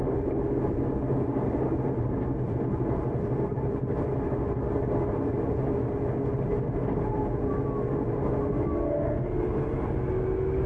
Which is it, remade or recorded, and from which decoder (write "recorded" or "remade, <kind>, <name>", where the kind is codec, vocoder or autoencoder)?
recorded